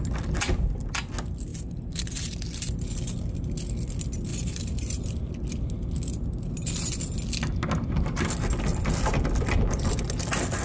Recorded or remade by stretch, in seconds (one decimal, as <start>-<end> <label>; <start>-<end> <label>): 0.0-1.5 recorded; 1.5-2.1 remade; 2.1-4.3 recorded; 4.3-5.3 remade; 5.3-10.6 recorded